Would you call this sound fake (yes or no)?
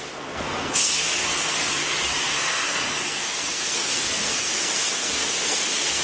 yes